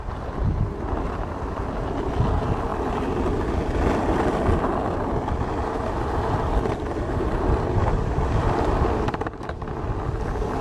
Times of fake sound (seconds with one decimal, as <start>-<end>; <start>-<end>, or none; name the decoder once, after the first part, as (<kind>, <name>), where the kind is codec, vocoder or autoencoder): none